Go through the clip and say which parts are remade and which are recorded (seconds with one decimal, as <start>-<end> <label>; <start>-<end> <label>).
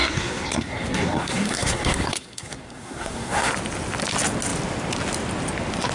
0.0-3.5 remade; 3.5-5.9 recorded